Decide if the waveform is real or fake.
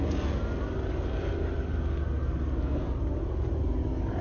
real